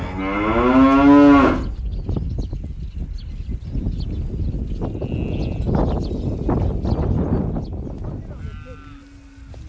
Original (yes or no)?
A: yes